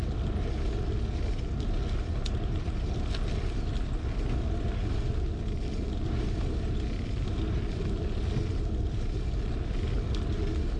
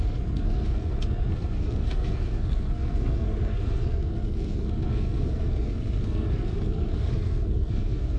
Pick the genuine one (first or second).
first